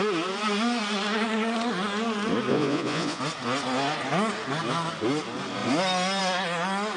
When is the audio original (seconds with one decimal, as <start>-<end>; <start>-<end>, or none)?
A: 0.0-2.5; 3.2-7.0